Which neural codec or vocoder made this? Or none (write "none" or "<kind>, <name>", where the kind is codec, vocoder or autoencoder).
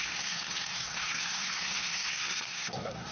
codec, SNAC